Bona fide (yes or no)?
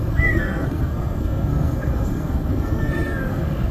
no